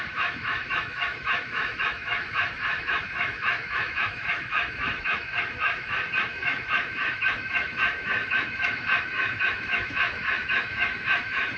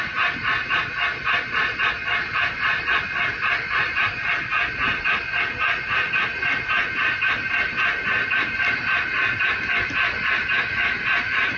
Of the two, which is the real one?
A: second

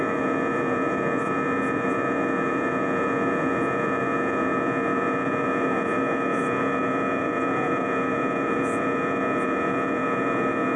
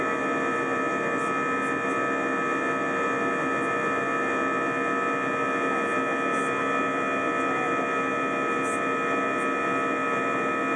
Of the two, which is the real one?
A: second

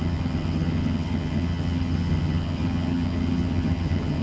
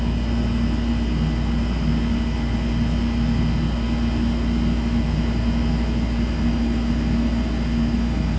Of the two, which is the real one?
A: second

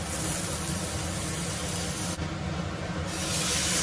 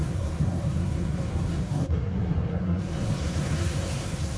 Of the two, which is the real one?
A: first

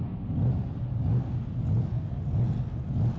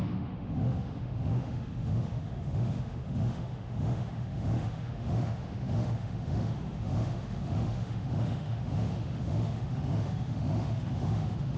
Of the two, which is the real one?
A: first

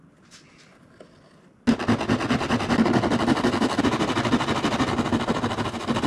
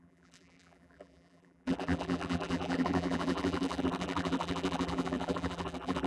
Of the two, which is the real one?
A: first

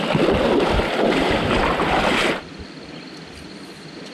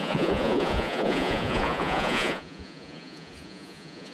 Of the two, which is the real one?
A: first